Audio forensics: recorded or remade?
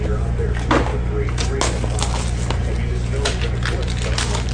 recorded